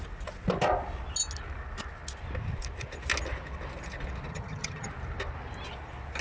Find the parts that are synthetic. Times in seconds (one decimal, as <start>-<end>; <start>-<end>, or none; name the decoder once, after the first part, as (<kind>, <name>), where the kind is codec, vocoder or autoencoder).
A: 4.3-4.9 (vocoder, HiFi-GAN)